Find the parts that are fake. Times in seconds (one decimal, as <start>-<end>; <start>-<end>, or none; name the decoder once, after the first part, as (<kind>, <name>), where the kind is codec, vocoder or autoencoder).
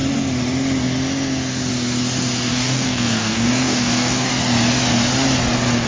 2.5-4.3 (codec, DAC)